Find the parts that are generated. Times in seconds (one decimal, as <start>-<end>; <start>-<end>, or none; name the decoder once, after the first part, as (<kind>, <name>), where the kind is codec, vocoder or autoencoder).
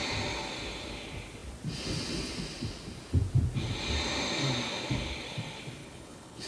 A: 5.8-6.5 (codec, HILCodec)